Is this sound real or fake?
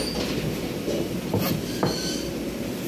real